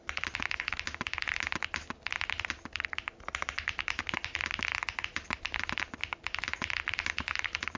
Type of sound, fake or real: real